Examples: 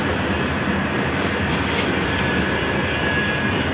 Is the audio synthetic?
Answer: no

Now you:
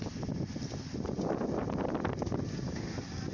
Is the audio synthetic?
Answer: no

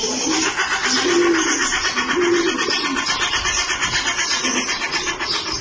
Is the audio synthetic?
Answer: no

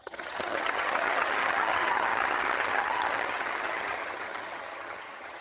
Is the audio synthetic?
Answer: yes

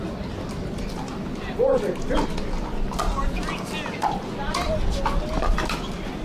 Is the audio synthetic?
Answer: no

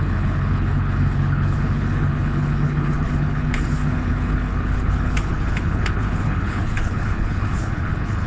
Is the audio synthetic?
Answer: yes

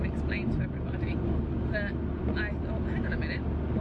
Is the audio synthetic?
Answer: no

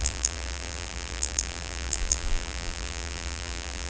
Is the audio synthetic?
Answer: yes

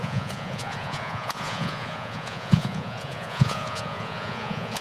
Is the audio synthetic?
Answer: yes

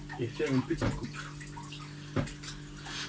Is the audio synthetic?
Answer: no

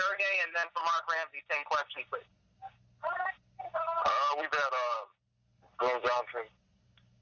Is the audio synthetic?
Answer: no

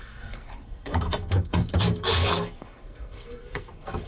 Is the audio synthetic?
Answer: yes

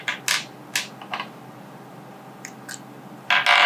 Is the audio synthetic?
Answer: no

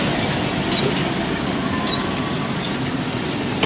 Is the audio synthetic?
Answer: no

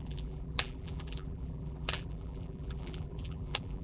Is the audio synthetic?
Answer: yes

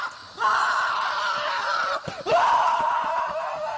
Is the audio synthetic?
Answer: yes